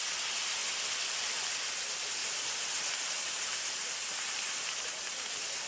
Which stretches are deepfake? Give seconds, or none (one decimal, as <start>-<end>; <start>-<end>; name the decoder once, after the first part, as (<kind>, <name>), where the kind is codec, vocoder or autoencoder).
0.6-1.7 (vocoder, BigVGAN v2); 2.2-5.7